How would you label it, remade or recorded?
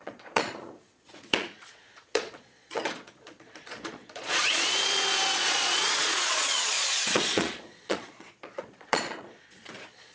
remade